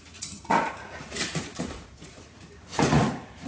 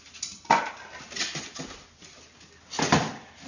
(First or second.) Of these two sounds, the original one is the second